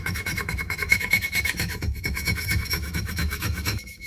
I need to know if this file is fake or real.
fake